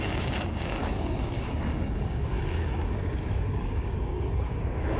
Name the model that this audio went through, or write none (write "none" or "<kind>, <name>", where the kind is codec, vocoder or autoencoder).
codec, DAC